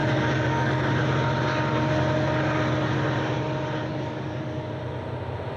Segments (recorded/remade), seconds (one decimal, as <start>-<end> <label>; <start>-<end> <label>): 0.0-0.9 remade; 0.9-3.9 recorded; 3.9-4.7 remade; 4.7-5.6 recorded